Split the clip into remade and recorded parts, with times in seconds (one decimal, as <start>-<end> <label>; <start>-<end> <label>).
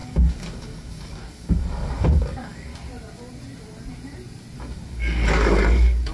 0.0-2.7 remade; 2.7-4.6 recorded; 4.6-6.1 remade